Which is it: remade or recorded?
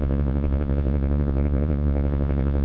remade